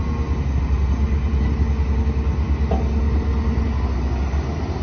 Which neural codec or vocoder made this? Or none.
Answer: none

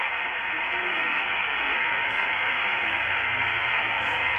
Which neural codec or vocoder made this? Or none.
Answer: codec, SNAC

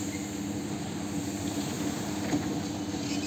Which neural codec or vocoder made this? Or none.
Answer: none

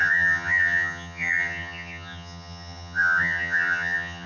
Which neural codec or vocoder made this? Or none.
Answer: vocoder, HiFi-GAN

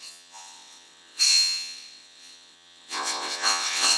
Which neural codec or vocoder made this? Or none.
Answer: vocoder, WaveNeXt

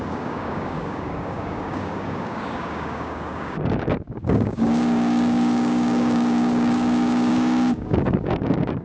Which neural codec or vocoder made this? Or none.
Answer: codec, DAC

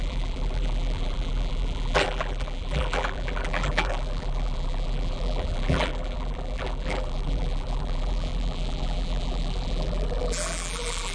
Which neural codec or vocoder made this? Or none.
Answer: vocoder, BigVGAN v2